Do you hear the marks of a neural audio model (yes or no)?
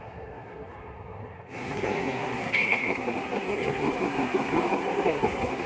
yes